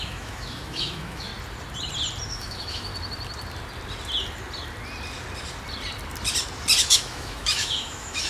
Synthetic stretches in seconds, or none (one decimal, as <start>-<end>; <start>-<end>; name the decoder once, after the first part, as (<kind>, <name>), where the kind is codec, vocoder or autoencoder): 0.0-1.3 (autoencoder, DAC-VAE); 2.3-2.9; 6.8-8.3